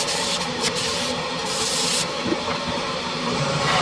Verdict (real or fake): fake